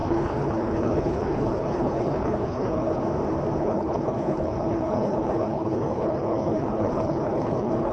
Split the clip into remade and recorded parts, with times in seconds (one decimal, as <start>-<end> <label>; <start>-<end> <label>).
0.0-3.0 remade; 3.0-3.6 recorded; 3.6-7.9 remade